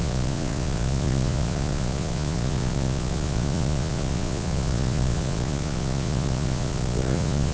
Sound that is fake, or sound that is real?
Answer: fake